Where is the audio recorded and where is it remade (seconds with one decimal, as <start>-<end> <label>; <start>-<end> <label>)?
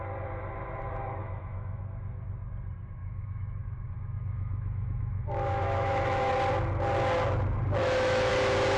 0.0-1.2 recorded; 1.2-1.8 remade; 1.8-3.0 recorded; 3.0-6.3 remade; 6.3-7.8 recorded; 7.8-8.3 remade; 8.3-8.8 recorded